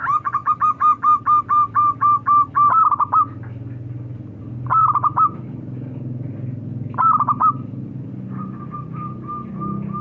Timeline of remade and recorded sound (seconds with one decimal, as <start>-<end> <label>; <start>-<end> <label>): 0.0-10.0 recorded